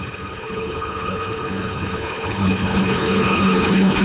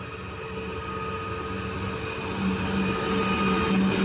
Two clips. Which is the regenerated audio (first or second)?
first